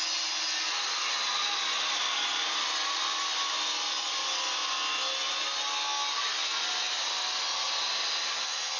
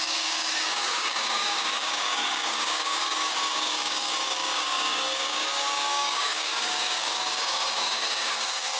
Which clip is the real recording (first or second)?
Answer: first